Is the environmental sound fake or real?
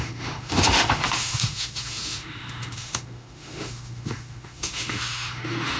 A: fake